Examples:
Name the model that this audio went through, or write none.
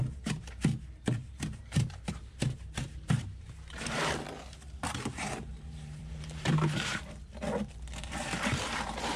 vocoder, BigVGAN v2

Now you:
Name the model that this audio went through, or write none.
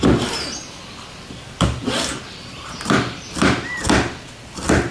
vocoder, BigVGAN v2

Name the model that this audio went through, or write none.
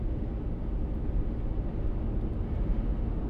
none